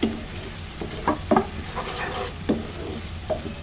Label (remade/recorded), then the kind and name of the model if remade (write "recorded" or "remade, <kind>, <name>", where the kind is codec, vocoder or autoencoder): recorded